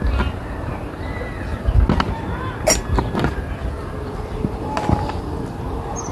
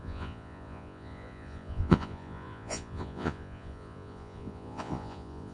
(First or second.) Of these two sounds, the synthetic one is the second